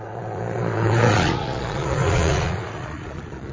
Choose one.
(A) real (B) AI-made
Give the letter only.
B